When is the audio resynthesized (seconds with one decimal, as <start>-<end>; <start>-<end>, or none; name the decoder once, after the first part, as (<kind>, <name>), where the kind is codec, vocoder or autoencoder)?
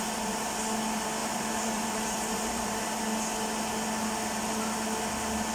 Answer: 1.2-3.0 (vocoder, BigVGAN v2)